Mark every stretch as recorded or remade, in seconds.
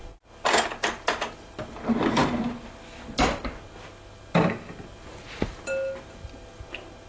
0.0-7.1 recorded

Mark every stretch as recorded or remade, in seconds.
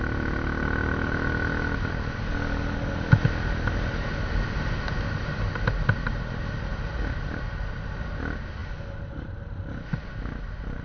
0.0-6.7 recorded; 6.7-7.5 remade; 7.5-8.6 recorded; 8.6-9.4 remade; 9.4-10.8 recorded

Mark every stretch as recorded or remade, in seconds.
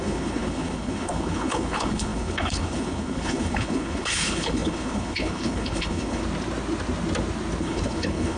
0.0-6.2 remade; 6.2-7.6 recorded; 7.6-8.4 remade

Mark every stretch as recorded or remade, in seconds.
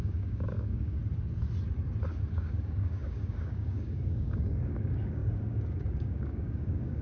0.0-1.0 remade; 1.0-2.3 recorded; 2.3-7.0 remade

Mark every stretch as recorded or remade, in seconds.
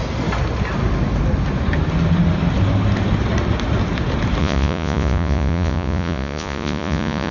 0.0-4.4 recorded; 4.4-7.3 remade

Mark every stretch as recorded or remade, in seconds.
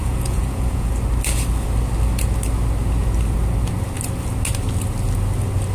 0.0-0.9 remade; 0.9-5.7 recorded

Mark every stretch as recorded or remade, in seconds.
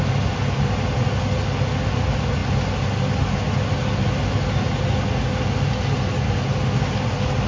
0.0-7.5 recorded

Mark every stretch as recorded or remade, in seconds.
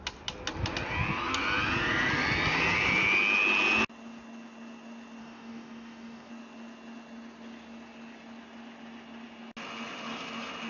0.0-5.2 recorded; 5.2-6.3 remade; 6.3-10.7 recorded